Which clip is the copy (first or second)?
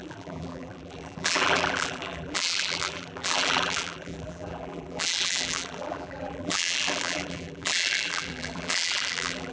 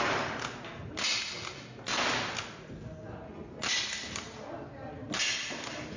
first